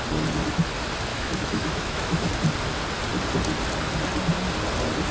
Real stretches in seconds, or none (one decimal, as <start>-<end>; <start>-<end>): 0.0-1.1; 2.3-5.1